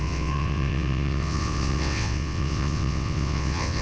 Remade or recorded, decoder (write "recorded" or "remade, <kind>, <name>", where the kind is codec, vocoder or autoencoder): remade, vocoder, WaveNeXt